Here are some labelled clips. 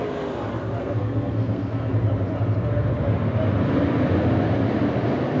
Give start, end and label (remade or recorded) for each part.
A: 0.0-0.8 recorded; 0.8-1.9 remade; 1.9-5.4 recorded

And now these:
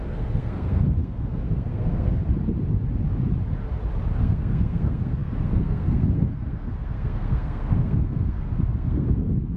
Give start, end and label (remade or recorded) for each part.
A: 0.0-2.2 remade; 2.2-4.2 recorded; 4.2-9.6 remade

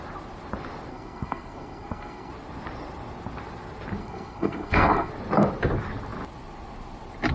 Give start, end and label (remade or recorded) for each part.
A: 0.0-0.9 recorded; 0.9-2.3 remade; 2.3-4.0 recorded; 4.0-5.1 remade; 5.1-7.3 recorded

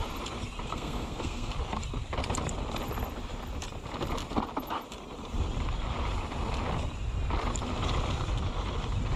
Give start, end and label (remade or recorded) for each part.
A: 0.0-0.7 recorded; 0.7-1.5 remade; 1.5-9.2 recorded

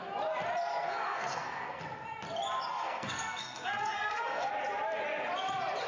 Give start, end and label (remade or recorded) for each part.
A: 0.0-0.7 recorded; 0.7-1.8 remade; 1.8-2.7 recorded; 2.7-4.5 remade; 4.5-5.9 recorded

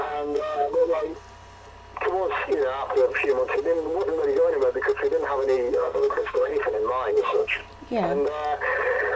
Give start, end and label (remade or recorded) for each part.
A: 0.0-1.1 remade; 1.1-5.7 recorded; 5.7-6.5 remade; 6.5-7.1 recorded; 7.1-7.6 remade; 7.6-9.2 recorded